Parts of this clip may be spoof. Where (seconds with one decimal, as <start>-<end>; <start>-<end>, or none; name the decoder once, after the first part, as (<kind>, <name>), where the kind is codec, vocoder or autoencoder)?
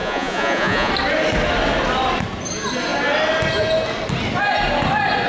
0.0-0.9 (vocoder, Vocos)